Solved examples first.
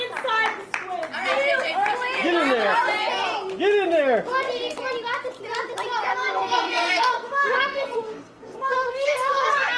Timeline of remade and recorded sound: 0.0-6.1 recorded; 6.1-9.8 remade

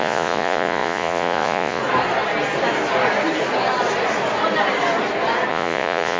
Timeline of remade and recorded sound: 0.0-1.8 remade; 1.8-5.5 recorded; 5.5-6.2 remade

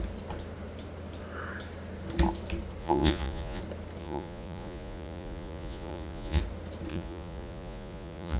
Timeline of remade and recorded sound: 0.0-2.8 recorded; 2.8-3.6 remade; 3.6-4.0 recorded; 4.0-6.4 remade; 6.4-6.9 recorded; 6.9-8.4 remade

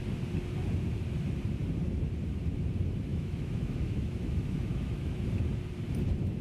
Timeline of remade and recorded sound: 0.0-3.1 recorded; 3.1-5.1 remade; 5.1-6.4 recorded

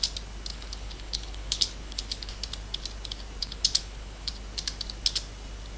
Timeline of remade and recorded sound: 0.0-0.5 recorded; 0.5-2.3 remade; 2.3-3.4 recorded; 3.4-4.3 remade; 4.3-5.8 recorded

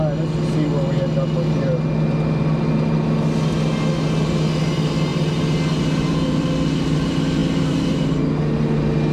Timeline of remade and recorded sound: 0.0-9.1 recorded

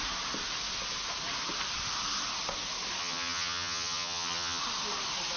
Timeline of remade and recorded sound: 0.0-3.0 recorded; 3.0-4.6 remade; 4.6-5.4 recorded